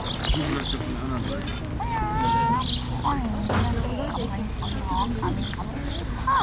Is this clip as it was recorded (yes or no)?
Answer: yes